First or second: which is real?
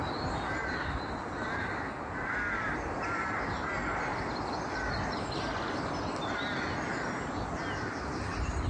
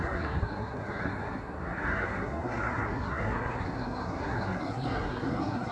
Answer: first